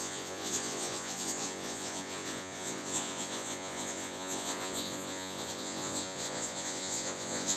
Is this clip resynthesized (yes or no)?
yes